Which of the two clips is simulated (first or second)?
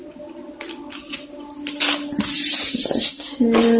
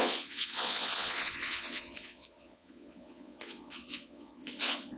second